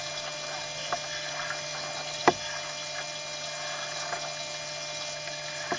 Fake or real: real